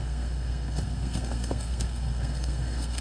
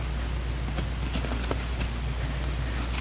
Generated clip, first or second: first